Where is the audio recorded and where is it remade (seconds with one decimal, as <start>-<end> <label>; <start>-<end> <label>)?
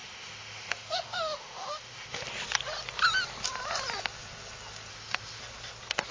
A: 0.0-2.2 remade; 2.2-4.9 recorded; 4.9-5.4 remade; 5.4-6.1 recorded